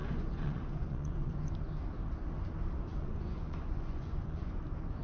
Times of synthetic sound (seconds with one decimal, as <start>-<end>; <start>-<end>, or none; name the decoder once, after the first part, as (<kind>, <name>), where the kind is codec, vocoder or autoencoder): 0.0-1.3 (vocoder, Vocos); 2.9-4.6